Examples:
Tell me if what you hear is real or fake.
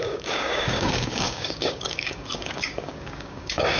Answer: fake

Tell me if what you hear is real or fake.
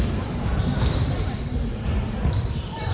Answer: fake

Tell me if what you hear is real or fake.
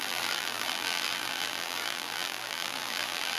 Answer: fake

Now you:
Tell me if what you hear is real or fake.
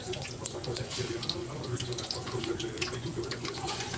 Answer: fake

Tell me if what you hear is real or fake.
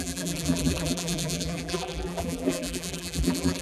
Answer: fake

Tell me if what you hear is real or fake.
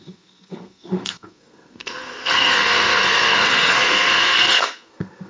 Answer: fake